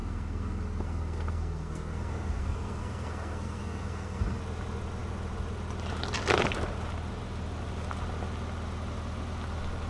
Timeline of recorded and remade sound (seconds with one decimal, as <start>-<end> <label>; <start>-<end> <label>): 0.0-4.4 remade; 4.4-9.9 recorded